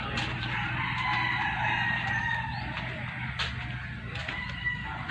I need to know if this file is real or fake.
real